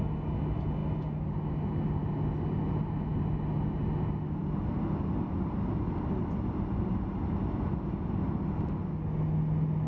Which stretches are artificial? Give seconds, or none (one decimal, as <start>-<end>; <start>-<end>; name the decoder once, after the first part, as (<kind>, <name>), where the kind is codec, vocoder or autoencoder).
none